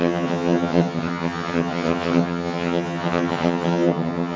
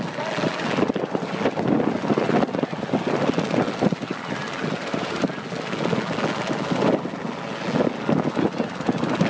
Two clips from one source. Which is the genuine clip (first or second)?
second